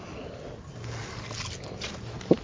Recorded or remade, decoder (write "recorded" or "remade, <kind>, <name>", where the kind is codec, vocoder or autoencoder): recorded